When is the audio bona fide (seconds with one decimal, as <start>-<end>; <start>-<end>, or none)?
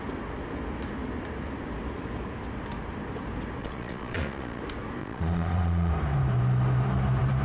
0.0-3.6; 4.6-5.0; 5.9-7.4